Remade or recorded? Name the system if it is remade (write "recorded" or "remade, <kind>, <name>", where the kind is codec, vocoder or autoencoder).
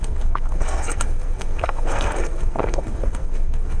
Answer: remade, codec, SNAC